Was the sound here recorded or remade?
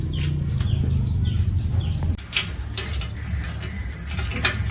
recorded